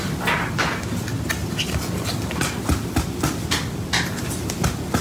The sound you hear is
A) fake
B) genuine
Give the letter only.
B